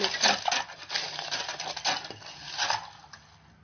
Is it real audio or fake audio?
real